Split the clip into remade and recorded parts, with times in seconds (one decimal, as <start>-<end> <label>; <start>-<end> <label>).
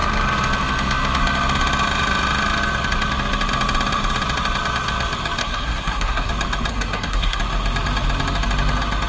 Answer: 0.0-5.4 recorded; 5.4-6.3 remade; 6.3-6.7 recorded; 6.7-7.4 remade; 7.4-9.1 recorded